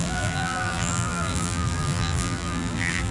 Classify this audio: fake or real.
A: fake